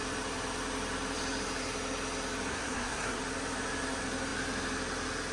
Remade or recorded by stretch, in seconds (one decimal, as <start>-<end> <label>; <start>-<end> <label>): 0.0-2.5 recorded; 2.5-3.2 remade; 3.2-5.3 recorded